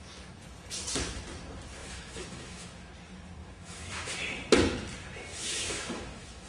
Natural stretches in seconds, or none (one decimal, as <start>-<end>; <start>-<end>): 0.0-1.8; 2.9-3.4; 4.1-5.3